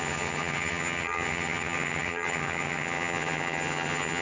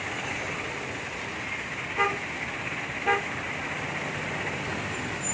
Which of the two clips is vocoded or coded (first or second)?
first